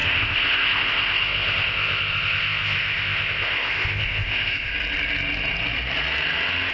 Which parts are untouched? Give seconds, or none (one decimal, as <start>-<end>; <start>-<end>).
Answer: 4.7-6.7